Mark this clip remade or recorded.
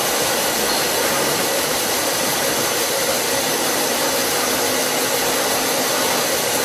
recorded